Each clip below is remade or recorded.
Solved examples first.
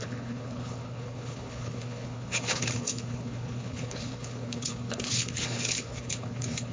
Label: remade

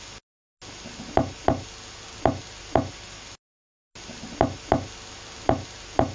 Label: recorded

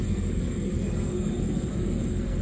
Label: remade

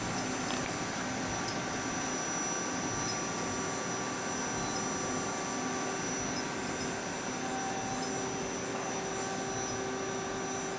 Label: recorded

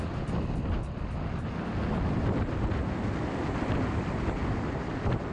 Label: recorded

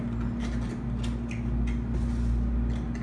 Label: recorded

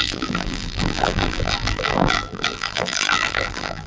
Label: remade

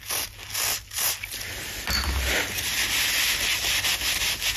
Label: recorded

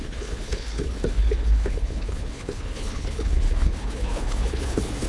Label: remade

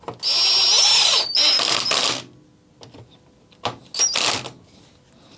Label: recorded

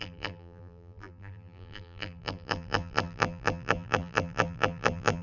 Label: remade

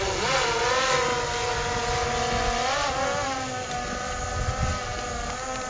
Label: recorded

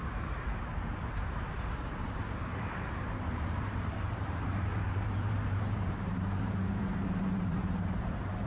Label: remade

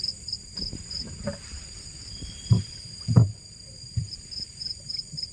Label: recorded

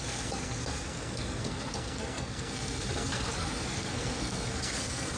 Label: remade